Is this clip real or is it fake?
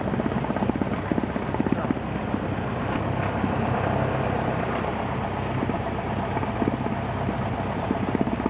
real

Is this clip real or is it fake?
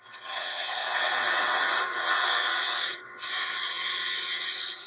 fake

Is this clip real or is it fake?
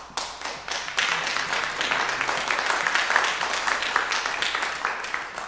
real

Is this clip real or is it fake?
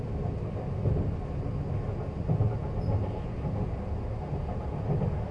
real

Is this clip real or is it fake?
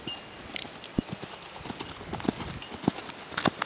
real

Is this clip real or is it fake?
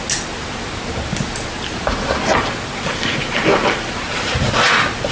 real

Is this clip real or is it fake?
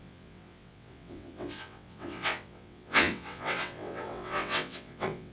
fake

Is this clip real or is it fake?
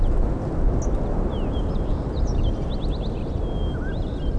real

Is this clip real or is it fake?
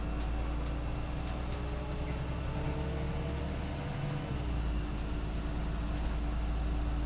real